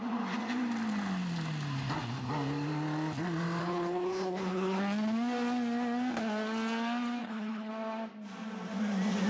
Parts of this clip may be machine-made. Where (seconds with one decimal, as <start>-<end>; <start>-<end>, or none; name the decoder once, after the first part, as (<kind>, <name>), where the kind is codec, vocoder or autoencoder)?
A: 3.6-4.8 (codec, HILCodec); 7.2-7.7